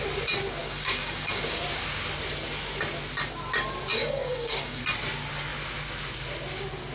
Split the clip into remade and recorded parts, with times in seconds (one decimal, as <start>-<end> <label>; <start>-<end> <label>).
0.0-0.6 recorded; 0.6-1.6 remade; 1.6-4.0 recorded; 4.0-4.8 remade; 4.8-6.9 recorded